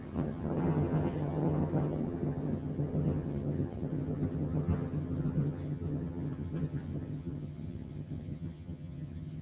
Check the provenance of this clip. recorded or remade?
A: remade